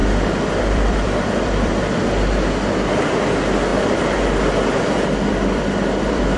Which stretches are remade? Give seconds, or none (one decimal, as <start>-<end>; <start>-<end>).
0.0-1.9; 3.7-6.4